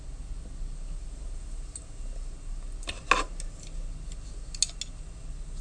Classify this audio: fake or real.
real